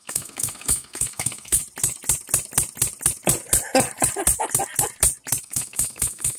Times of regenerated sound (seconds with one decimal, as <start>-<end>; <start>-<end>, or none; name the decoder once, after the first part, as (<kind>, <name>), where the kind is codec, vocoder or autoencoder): 0.0-1.6 (codec, SNAC); 5.4-6.4

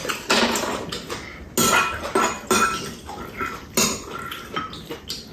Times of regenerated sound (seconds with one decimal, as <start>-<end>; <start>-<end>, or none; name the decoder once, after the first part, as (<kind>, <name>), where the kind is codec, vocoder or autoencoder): none

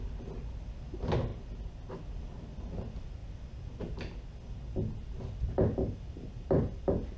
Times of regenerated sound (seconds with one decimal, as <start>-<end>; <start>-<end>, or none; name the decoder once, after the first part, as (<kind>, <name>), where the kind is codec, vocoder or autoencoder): none